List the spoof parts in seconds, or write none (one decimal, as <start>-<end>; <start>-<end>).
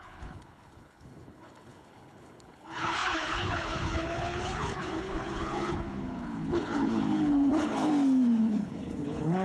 0.0-7.9; 8.4-9.4